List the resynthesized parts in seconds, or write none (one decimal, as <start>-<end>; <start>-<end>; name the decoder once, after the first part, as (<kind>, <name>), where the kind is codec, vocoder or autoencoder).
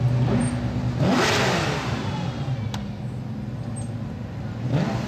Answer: none